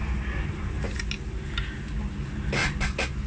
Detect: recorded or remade recorded